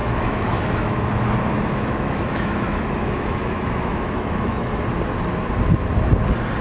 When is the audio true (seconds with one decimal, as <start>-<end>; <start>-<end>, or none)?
1.1-1.5; 4.8-6.6